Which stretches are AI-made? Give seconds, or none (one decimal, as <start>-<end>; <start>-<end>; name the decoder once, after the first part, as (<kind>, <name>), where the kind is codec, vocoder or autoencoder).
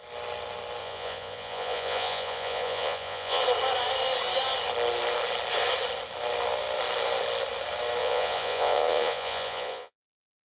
0.8-3.4 (vocoder, Vocos); 8.0-10.4